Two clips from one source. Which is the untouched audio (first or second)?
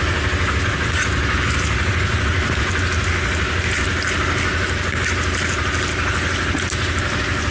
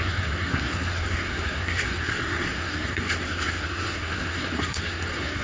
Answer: first